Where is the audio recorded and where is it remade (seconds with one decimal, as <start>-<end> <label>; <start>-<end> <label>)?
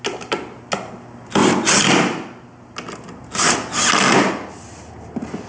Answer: 0.0-5.5 recorded